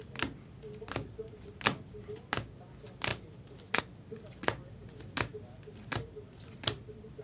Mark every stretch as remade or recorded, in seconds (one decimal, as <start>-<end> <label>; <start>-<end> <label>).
0.0-7.2 recorded

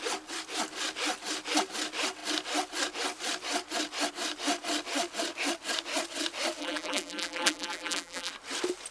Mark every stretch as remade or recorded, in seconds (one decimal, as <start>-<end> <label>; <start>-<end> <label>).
0.0-6.6 recorded; 6.6-8.3 remade; 8.3-8.9 recorded

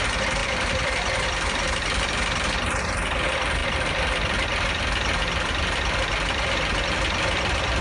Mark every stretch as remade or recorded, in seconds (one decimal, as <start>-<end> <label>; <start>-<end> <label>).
0.0-0.4 recorded; 0.4-2.1 remade; 2.1-3.6 recorded; 3.6-6.5 remade; 6.5-7.8 recorded

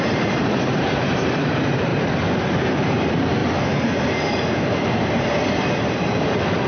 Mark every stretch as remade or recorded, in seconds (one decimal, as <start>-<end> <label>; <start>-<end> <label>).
0.0-1.9 remade; 1.9-2.4 recorded; 2.4-3.4 remade; 3.4-4.0 recorded; 4.0-6.7 remade

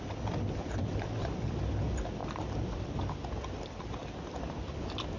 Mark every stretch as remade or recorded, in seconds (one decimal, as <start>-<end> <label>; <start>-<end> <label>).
0.0-0.6 recorded; 0.6-1.3 remade; 1.3-5.2 recorded

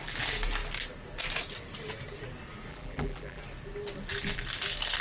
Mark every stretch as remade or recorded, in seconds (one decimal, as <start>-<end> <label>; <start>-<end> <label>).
0.0-2.7 recorded; 2.7-3.4 remade; 3.4-5.0 recorded

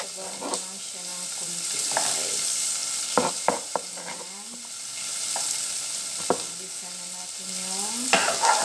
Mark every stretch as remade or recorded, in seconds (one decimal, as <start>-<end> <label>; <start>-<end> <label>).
0.0-1.1 recorded; 1.1-1.7 remade; 1.7-2.8 recorded; 2.8-5.3 remade; 5.3-8.6 recorded